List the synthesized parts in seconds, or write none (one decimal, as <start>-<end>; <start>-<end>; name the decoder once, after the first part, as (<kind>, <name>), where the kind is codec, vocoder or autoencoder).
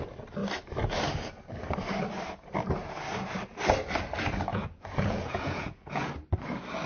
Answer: 4.5-6.1 (vocoder, Vocos)